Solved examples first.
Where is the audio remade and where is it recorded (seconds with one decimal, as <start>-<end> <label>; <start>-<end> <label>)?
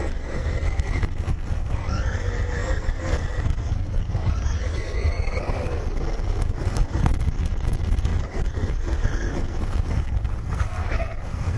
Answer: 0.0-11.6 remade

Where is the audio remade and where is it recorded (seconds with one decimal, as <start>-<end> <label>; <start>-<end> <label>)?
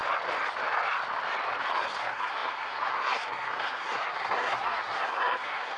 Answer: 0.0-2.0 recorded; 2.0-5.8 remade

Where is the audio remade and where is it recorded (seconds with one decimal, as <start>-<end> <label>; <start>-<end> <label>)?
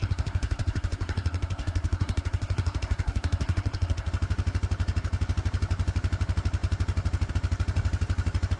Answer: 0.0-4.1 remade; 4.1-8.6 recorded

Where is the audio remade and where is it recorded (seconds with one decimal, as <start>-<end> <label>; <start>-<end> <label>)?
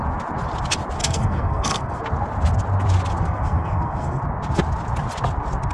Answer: 0.0-1.0 recorded; 1.0-2.0 remade; 2.0-3.2 recorded; 3.2-4.2 remade; 4.2-5.7 recorded